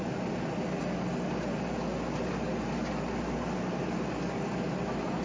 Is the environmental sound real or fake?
real